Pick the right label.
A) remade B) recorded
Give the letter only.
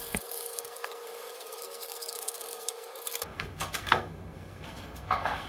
A